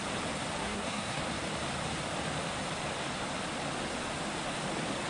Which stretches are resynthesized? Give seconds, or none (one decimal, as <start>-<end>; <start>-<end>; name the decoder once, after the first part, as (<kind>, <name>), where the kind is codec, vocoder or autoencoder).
0.6-1.2 (codec, SNAC)